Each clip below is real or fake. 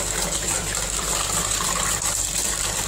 fake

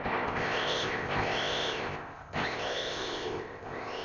fake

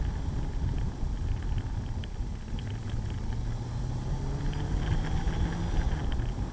real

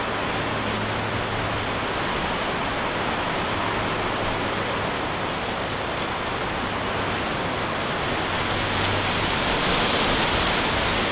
real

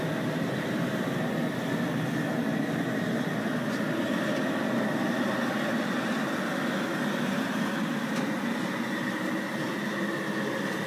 real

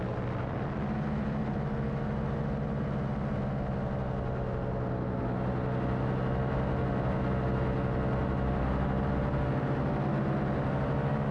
real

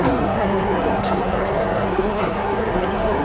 fake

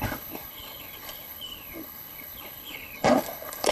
fake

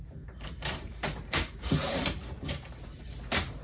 fake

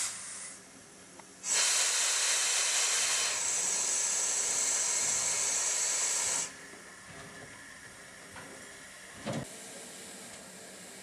real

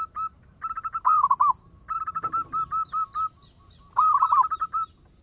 real